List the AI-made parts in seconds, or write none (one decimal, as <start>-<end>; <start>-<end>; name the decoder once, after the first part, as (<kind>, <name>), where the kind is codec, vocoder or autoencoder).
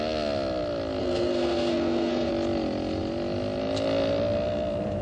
1.0-2.3 (codec, SNAC)